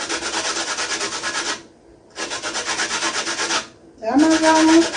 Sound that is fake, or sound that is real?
real